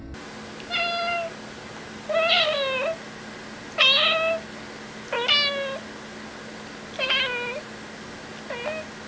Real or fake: real